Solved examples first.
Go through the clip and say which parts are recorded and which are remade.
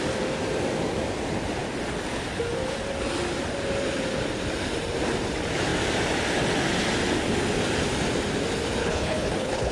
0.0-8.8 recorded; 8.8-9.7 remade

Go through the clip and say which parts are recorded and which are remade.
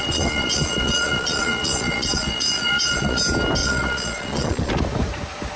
0.0-3.2 remade; 3.2-3.6 recorded; 3.6-4.7 remade; 4.7-5.6 recorded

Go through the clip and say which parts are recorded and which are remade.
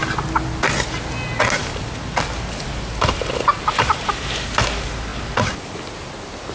0.0-6.5 recorded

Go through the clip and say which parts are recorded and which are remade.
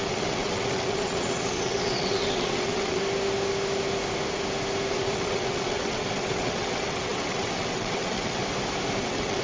0.0-3.0 remade; 3.0-4.9 recorded; 4.9-8.4 remade; 8.4-9.0 recorded; 9.0-9.4 remade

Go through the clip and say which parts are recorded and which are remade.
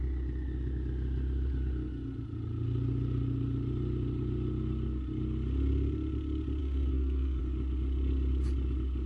0.0-6.6 recorded; 6.6-7.4 remade; 7.4-9.1 recorded